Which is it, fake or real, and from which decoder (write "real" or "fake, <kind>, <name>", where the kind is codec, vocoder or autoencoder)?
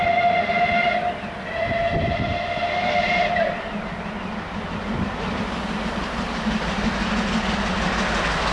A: real